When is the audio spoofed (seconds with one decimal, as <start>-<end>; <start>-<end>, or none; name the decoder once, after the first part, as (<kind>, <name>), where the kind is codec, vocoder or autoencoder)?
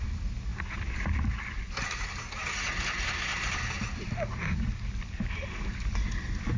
none